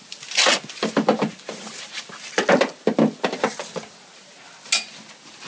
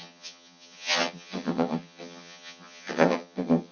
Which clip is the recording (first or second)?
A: first